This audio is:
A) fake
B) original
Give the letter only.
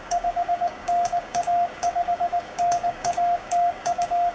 A